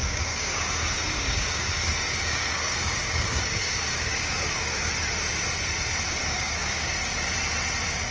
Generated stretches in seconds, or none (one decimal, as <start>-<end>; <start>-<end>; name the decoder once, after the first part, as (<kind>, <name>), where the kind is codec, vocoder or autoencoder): 0.0-4.9 (codec, DAC); 6.2-6.9